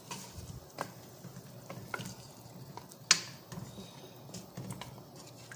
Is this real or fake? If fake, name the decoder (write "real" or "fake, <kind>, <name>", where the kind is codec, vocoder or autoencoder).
real